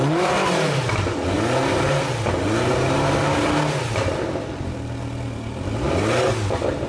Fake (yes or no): no